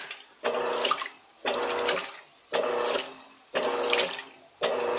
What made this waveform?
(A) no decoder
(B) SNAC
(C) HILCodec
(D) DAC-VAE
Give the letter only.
A